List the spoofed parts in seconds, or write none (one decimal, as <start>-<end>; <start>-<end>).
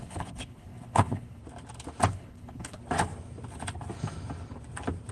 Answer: 0.0-1.4; 2.1-2.8